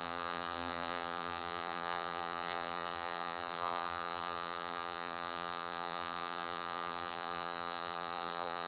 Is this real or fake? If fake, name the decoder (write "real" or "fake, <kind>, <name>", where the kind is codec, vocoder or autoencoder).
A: fake, vocoder, BigVGAN v2